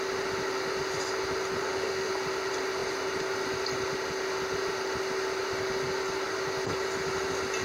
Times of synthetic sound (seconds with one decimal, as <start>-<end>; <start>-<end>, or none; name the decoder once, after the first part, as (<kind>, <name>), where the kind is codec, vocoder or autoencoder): 1.6-2.1 (autoencoder, DAC-VAE)